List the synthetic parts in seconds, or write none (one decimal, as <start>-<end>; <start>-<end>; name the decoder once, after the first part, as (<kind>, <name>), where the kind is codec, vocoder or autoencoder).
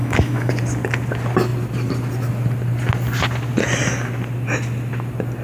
0.0-0.5 (autoencoder, DAC-VAE)